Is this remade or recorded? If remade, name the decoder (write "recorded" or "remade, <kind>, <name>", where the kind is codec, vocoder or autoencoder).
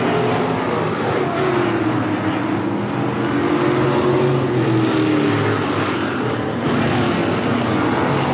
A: recorded